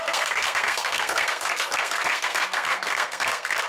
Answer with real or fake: fake